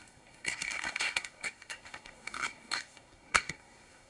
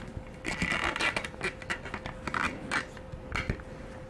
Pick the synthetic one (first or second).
first